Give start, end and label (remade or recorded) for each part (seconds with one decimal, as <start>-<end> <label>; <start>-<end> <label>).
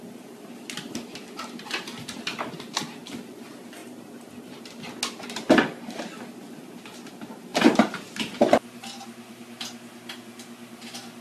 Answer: 0.0-3.8 recorded; 3.8-4.6 remade; 4.6-7.5 recorded; 7.5-11.2 remade